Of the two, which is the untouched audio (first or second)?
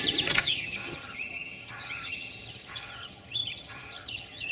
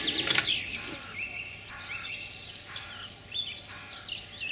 second